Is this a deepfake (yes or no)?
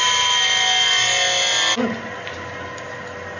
no